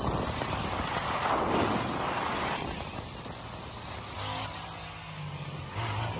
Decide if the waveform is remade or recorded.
recorded